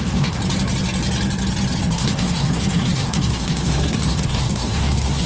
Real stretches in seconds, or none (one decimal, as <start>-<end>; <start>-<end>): 0.4-1.9